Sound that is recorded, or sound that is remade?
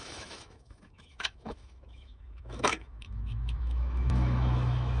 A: remade